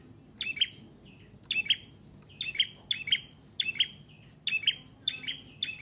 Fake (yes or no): no